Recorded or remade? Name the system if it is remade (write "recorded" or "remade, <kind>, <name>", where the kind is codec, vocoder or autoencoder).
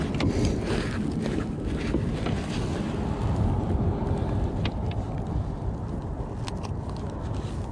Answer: recorded